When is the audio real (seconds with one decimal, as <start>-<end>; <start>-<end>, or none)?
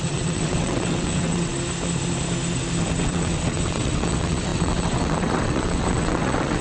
1.5-3.0